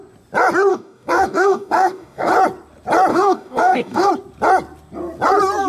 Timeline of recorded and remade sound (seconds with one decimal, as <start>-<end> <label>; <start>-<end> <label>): 0.0-0.7 recorded; 0.7-2.3 remade; 2.3-3.1 recorded; 3.1-4.1 remade; 4.1-5.7 recorded